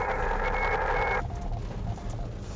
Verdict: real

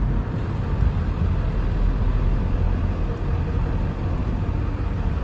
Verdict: real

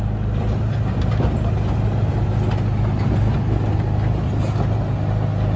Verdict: real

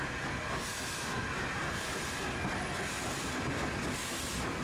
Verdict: real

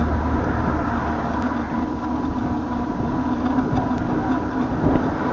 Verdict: real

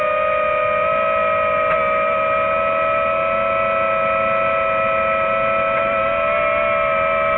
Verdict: real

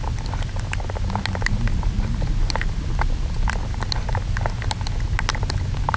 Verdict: real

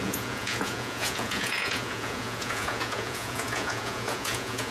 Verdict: fake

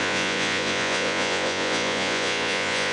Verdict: fake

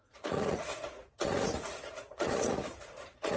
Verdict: fake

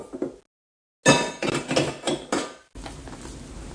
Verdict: real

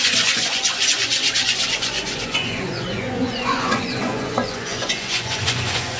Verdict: fake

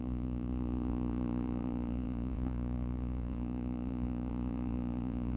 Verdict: fake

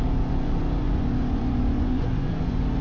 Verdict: fake